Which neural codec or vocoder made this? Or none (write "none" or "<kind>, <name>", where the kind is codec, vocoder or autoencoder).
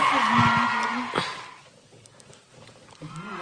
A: none